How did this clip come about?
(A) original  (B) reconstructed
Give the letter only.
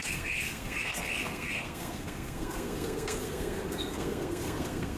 B